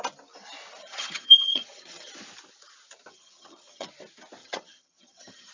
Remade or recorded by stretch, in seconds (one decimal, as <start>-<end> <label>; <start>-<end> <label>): 0.0-0.8 recorded; 0.8-2.1 remade; 2.1-3.1 recorded; 3.1-3.9 remade; 3.9-4.4 recorded; 4.4-5.5 remade